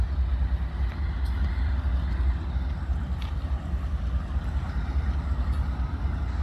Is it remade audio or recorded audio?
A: recorded